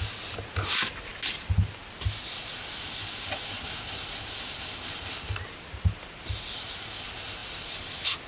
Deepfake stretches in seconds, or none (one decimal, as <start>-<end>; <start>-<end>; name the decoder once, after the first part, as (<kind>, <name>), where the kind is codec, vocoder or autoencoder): none